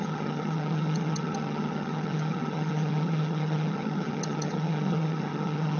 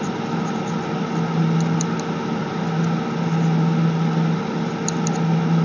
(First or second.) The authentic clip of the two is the second